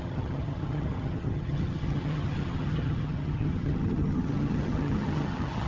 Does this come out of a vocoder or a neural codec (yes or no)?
yes